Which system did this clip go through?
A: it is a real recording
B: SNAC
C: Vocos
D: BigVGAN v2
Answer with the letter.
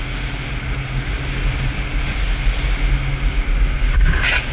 A